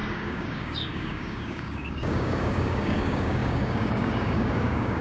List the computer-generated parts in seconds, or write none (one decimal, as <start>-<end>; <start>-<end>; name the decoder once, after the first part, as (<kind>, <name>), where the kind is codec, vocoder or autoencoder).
0.0-5.0 (codec, DAC)